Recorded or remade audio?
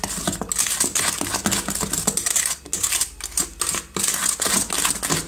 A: recorded